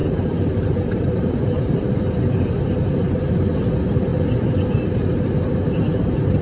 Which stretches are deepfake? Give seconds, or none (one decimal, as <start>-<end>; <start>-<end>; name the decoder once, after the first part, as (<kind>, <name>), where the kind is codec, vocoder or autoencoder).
0.0-2.1 (vocoder, BigVGAN v2)